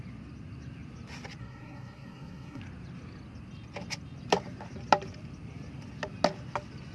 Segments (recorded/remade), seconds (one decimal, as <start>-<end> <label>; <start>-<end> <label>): 0.0-1.4 recorded; 1.4-2.6 remade; 2.6-6.9 recorded